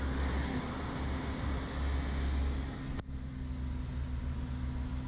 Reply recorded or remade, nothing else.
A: recorded